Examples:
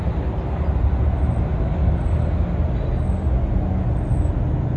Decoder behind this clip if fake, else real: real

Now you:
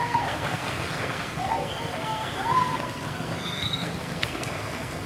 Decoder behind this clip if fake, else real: fake, codec, SNAC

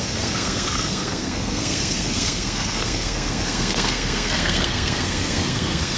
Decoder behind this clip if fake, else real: fake, codec, SNAC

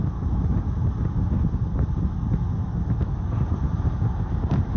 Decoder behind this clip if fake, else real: real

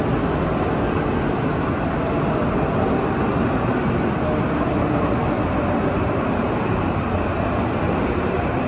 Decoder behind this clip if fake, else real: real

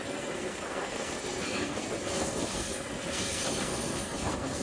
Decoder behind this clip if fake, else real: fake, codec, SNAC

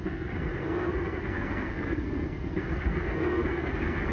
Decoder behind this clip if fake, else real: fake, codec, SNAC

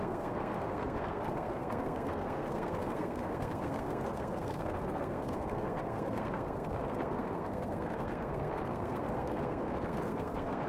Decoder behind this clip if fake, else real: fake, codec, SNAC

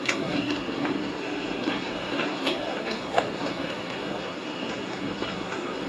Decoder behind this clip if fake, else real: fake, codec, SNAC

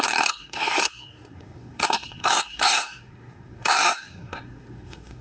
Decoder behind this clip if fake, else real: fake, codec, SNAC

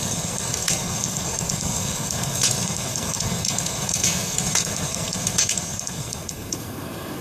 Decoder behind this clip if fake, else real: fake, codec, SNAC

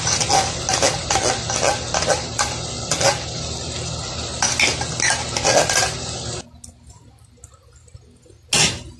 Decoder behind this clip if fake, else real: real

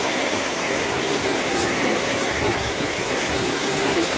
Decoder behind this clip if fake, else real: fake, codec, SNAC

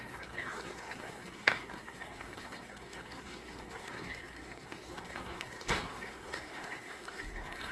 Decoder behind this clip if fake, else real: fake, codec, SNAC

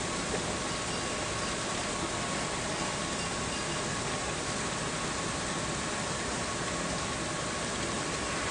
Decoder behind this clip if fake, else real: real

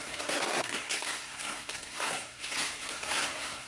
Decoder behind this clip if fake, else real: fake, codec, SNAC